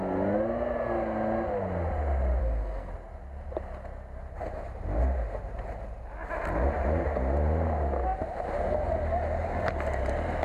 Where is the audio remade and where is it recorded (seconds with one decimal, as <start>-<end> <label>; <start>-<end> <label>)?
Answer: 0.0-2.4 recorded; 2.4-2.9 remade; 2.9-10.4 recorded